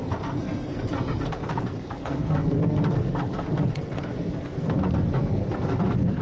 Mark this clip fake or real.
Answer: fake